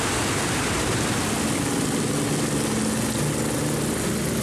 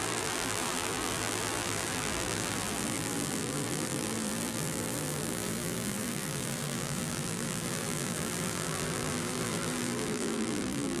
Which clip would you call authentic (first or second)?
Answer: first